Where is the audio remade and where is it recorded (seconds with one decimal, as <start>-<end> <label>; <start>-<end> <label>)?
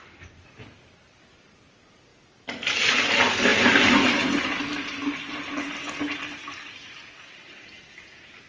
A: 0.0-8.5 recorded